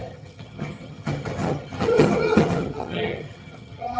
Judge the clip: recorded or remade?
remade